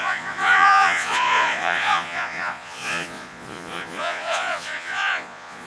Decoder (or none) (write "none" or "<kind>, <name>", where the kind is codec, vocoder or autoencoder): vocoder, Vocos